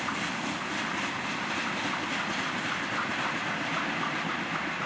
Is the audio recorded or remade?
recorded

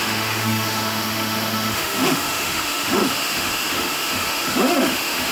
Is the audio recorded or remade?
remade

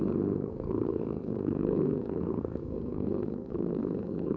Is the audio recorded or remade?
remade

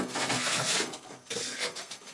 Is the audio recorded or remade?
remade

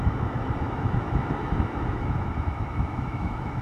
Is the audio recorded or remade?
remade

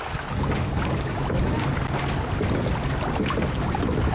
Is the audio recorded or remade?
recorded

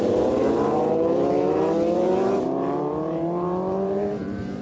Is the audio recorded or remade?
remade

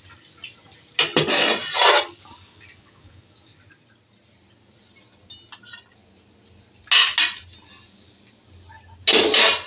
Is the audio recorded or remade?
recorded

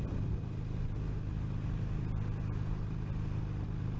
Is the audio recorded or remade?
recorded